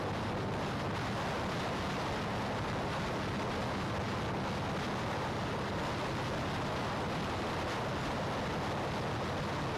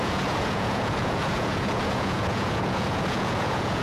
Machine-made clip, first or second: second